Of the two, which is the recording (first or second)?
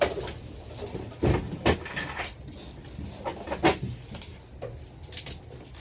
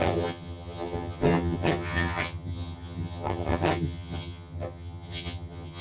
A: first